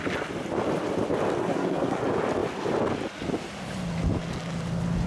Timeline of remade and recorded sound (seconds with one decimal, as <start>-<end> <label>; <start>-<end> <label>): 0.0-1.4 recorded; 1.4-2.0 remade; 2.0-5.1 recorded